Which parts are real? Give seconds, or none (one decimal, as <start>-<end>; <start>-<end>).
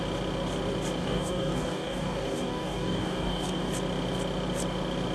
0.0-1.0; 3.7-5.1